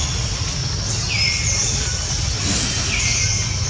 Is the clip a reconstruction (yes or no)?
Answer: no